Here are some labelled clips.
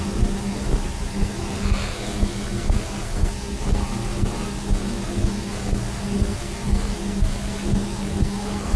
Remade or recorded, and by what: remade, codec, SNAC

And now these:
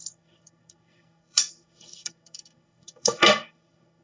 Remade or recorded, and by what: remade, codec, SNAC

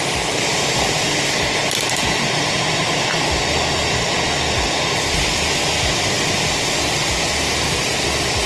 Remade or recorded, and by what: recorded